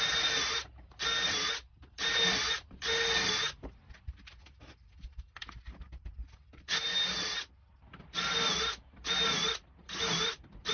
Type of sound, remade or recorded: recorded